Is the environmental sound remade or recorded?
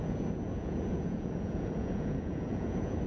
remade